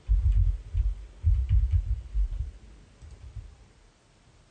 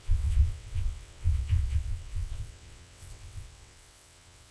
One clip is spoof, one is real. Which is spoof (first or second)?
second